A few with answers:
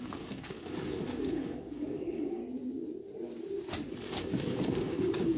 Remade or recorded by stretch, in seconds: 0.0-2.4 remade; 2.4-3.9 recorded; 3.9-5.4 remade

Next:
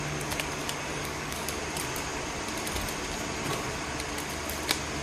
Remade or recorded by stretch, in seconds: 0.0-0.9 recorded; 0.9-1.5 remade; 1.5-5.0 recorded

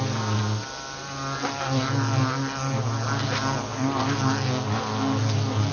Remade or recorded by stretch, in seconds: 0.0-5.7 recorded

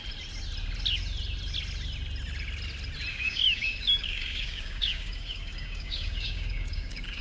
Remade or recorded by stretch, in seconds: 0.0-3.1 recorded; 3.1-7.2 remade

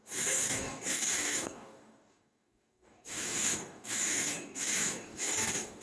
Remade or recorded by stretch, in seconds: 0.0-5.8 remade